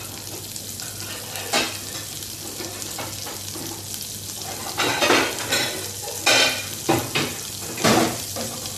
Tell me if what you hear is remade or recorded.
recorded